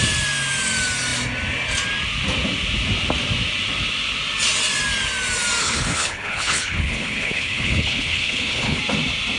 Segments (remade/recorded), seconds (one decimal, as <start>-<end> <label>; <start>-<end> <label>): 0.0-5.6 recorded; 5.6-8.8 remade; 8.8-9.4 recorded